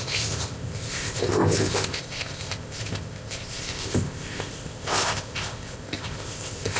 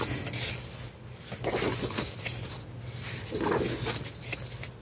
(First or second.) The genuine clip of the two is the second